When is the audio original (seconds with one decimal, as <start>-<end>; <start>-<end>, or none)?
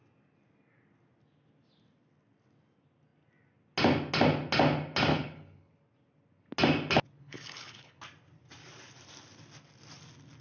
0.0-5.1; 5.7-7.2; 8.0-10.4